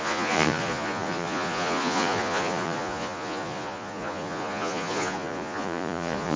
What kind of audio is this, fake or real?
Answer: fake